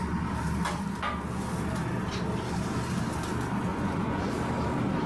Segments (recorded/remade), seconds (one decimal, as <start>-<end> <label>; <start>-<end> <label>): 0.0-3.7 recorded; 3.7-4.3 remade; 4.3-5.1 recorded